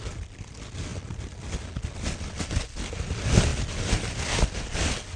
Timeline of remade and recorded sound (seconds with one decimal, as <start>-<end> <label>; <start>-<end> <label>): 0.0-5.2 recorded